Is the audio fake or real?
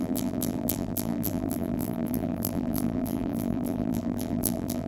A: fake